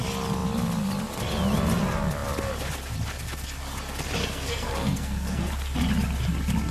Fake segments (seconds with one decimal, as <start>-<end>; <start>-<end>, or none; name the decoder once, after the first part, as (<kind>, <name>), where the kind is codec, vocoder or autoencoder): 4.2-5.5 (codec, SNAC)